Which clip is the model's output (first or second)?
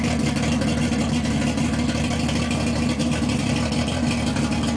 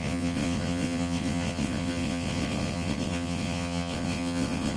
second